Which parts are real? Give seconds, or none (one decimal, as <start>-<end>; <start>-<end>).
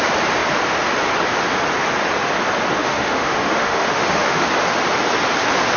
0.0-2.8; 4.5-5.8